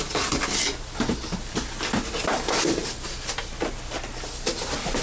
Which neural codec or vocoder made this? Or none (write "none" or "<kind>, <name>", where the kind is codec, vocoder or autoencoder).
none